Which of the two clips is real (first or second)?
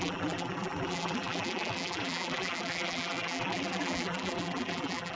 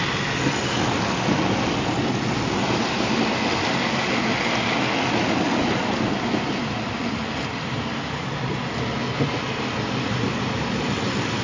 second